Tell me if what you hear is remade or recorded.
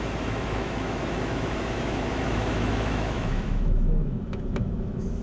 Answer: remade